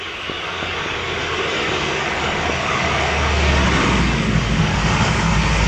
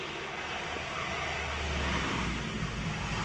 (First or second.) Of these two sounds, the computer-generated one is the first